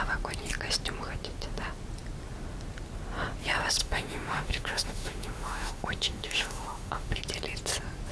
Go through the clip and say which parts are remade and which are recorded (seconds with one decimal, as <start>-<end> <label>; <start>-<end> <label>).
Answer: 0.0-3.8 recorded; 3.8-7.2 remade; 7.2-8.1 recorded